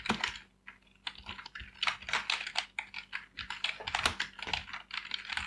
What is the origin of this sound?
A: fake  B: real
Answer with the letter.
B